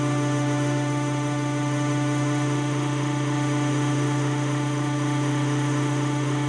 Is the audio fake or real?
fake